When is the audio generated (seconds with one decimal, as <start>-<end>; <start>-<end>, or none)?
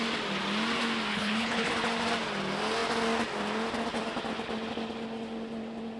1.1-1.7